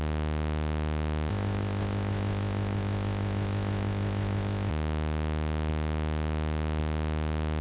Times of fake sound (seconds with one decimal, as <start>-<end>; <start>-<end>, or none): 1.3-4.7